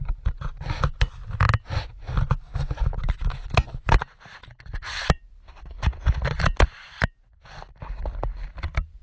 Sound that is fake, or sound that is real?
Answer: real